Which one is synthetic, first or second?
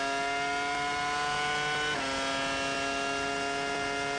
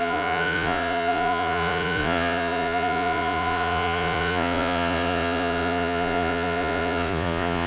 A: second